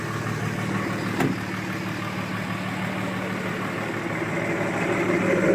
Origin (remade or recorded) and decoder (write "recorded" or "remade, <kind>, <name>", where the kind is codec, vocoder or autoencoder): recorded